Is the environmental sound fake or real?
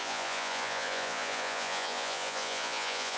fake